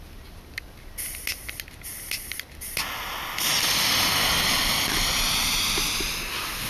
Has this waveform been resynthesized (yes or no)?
no